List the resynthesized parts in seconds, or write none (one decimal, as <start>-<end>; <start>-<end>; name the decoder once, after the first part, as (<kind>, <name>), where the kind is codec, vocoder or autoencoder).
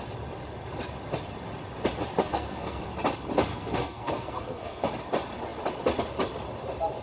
2.2-2.8 (codec, SNAC); 3.5-4.9